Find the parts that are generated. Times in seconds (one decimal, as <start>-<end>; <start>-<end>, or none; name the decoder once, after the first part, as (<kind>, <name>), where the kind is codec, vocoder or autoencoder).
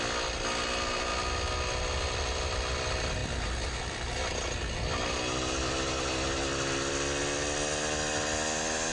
none